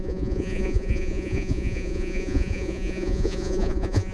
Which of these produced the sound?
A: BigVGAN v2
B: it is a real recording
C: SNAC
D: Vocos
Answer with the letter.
D